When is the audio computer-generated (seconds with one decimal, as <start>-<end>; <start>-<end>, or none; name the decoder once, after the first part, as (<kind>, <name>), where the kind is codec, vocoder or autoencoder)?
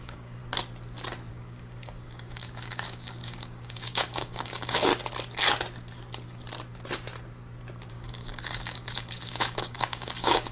0.0-0.4 (codec, DAC); 1.3-4.9; 7.9-10.5